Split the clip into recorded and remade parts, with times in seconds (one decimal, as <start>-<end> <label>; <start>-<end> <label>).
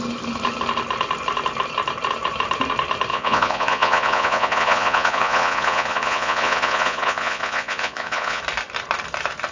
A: 0.0-3.1 recorded; 3.1-8.4 remade; 8.4-9.5 recorded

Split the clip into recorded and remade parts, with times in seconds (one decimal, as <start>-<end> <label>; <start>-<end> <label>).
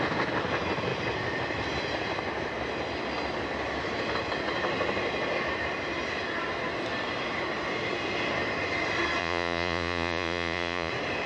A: 0.0-9.2 recorded; 9.2-10.9 remade; 10.9-11.3 recorded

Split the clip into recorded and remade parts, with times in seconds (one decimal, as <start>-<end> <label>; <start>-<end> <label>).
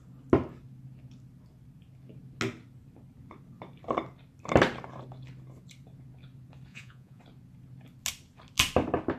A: 0.0-6.7 recorded; 6.7-7.2 remade; 7.2-9.2 recorded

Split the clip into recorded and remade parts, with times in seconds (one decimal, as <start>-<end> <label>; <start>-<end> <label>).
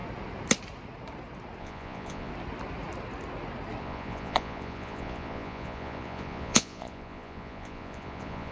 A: 0.0-1.6 recorded; 1.6-2.3 remade; 2.3-3.8 recorded; 3.8-8.5 remade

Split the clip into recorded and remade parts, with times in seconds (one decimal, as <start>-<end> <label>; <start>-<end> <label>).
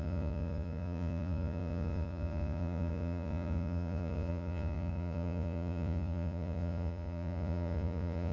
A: 0.0-8.3 remade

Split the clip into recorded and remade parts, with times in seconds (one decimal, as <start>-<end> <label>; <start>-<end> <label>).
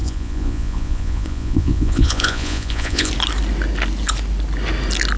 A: 0.0-3.1 remade; 3.1-5.2 recorded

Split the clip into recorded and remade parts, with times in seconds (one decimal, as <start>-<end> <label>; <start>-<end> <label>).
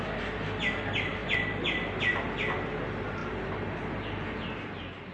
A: 0.0-5.1 recorded